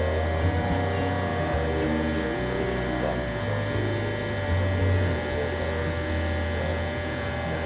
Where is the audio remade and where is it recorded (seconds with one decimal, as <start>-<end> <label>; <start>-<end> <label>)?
0.0-6.7 recorded; 6.7-7.3 remade; 7.3-7.7 recorded